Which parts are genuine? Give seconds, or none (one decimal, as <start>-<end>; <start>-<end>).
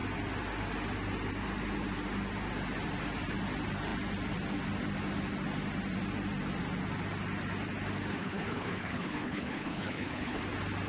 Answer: 0.0-8.2; 10.4-10.9